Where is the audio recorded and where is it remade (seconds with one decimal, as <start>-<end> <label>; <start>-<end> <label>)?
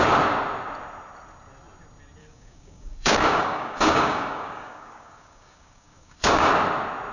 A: 0.0-2.2 recorded; 2.2-6.5 remade; 6.5-7.1 recorded